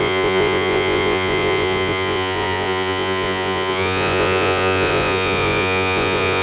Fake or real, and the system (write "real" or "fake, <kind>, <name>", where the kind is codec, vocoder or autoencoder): fake, vocoder, Vocos